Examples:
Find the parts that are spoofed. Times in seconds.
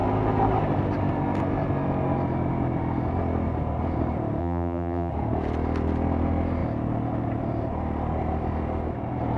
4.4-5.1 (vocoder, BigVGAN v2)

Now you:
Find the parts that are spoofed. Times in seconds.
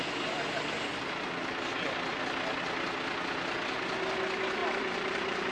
4.6-5.5 (vocoder, BigVGAN v2)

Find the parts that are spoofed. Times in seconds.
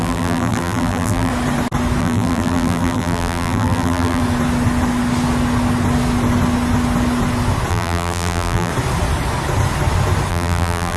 0.0-1.3 (vocoder, BigVGAN v2); 2.0-4.2; 7.7-8.7; 10.3-11.0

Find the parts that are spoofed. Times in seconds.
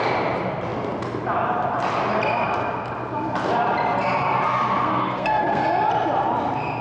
4.8-5.6 (codec, SNAC)